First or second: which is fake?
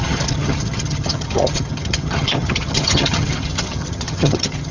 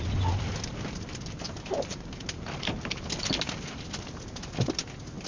first